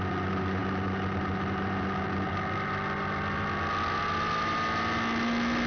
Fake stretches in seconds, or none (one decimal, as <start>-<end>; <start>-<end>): none